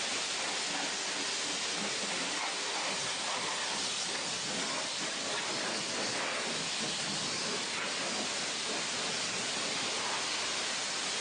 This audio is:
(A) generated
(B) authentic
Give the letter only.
B